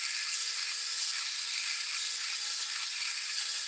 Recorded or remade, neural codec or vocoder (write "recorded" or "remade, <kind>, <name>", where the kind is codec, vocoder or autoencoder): recorded